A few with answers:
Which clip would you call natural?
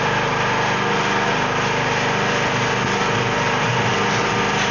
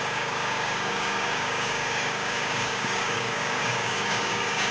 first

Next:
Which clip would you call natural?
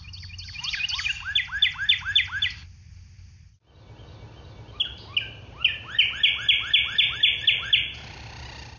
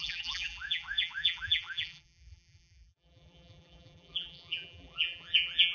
first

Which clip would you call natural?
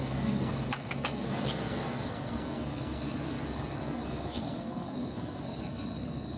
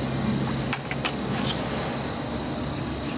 second